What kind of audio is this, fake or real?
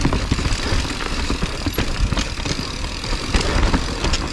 real